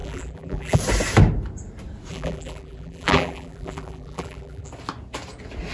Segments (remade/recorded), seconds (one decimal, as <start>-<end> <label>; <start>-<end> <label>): 0.0-0.8 remade; 0.8-2.1 recorded; 2.1-4.7 remade; 4.7-5.7 recorded